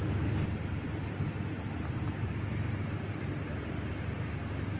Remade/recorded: recorded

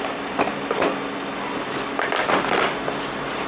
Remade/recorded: recorded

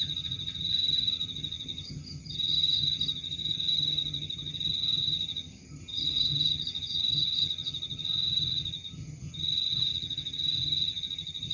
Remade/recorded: remade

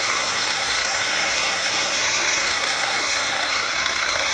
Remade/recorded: remade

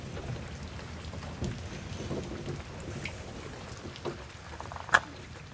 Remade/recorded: recorded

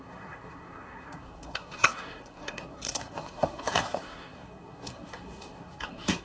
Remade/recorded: remade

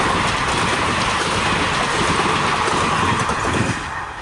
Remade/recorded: recorded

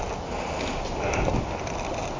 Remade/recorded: recorded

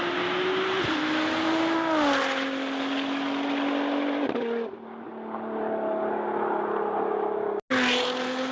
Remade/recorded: recorded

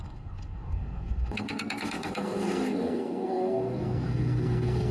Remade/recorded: remade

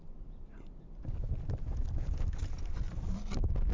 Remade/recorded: recorded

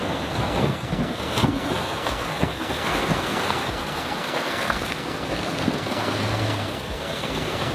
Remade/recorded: remade